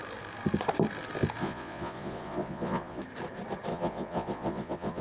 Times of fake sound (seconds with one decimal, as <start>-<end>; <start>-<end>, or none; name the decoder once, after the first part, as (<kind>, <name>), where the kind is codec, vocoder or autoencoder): 1.4-3.0 (vocoder, Vocos); 3.7-5.0